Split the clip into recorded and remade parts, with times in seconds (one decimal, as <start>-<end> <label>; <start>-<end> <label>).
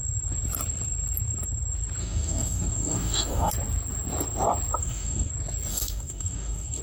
0.0-2.0 recorded; 2.0-3.5 remade; 3.5-4.8 recorded; 4.8-5.3 remade; 5.3-5.7 recorded; 5.7-6.8 remade